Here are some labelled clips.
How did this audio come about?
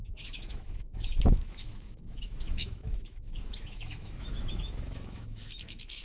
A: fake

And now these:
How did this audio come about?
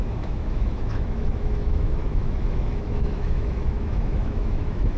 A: fake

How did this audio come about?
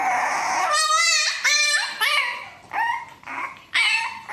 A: real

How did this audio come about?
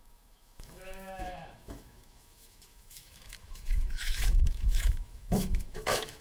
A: fake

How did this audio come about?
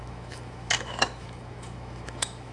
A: fake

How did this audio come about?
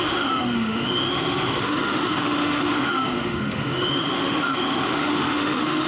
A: fake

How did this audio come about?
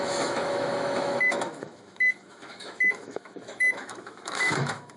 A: fake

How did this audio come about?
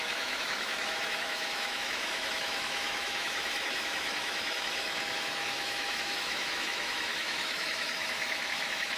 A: fake